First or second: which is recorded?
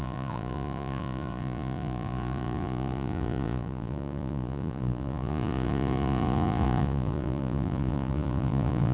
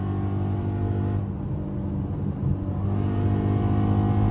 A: second